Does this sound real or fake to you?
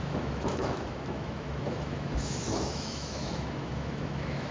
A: fake